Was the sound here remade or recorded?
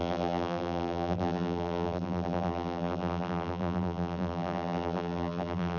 remade